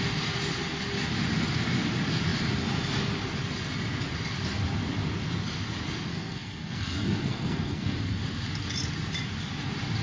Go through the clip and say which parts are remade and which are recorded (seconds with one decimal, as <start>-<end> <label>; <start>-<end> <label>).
0.0-6.1 recorded; 6.1-8.2 remade; 8.2-10.0 recorded